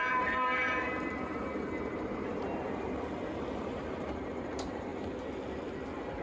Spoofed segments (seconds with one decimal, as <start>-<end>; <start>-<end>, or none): 0.0-4.9